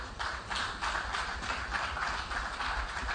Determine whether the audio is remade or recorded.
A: recorded